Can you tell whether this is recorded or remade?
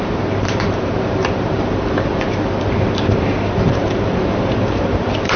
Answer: remade